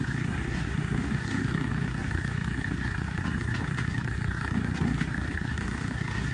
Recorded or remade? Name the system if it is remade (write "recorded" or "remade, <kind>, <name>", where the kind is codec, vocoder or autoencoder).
remade, codec, SNAC